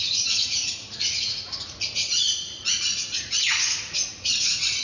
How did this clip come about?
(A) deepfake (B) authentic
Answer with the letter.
A